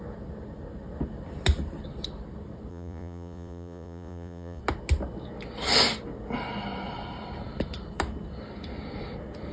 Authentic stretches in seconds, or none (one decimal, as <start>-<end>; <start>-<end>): 0.0-2.7; 4.6-9.5